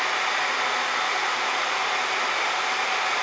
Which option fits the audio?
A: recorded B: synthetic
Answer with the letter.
A